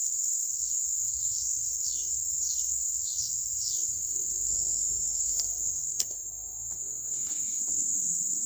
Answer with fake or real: fake